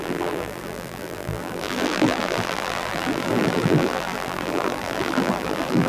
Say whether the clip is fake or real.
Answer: fake